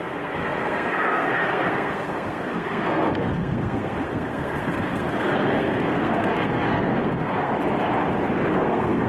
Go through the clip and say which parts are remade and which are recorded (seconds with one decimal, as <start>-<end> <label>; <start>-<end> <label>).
0.0-7.5 remade; 7.5-8.5 recorded; 8.5-9.1 remade

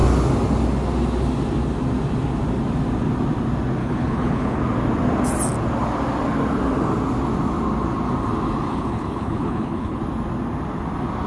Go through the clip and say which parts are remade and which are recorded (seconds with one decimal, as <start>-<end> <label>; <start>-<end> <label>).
0.0-3.8 recorded; 3.8-4.6 remade; 4.6-8.7 recorded; 8.7-10.0 remade; 10.0-11.3 recorded